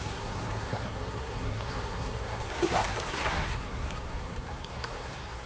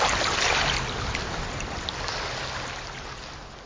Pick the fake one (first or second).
first